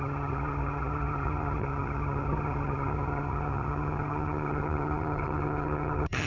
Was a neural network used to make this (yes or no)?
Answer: yes